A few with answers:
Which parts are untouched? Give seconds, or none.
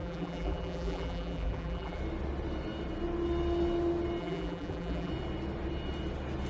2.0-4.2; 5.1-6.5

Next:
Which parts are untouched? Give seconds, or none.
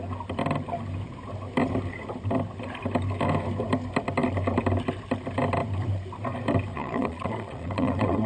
0.0-6.7